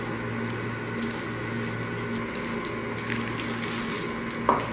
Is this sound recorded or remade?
recorded